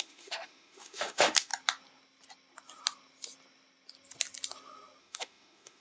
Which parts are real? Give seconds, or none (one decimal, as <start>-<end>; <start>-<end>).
1.5-5.0